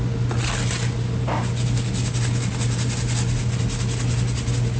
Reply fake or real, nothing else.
real